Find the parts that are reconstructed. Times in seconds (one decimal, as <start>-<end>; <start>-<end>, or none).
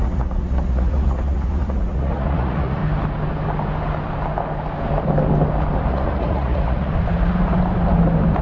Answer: 0.0-2.8; 5.9-6.9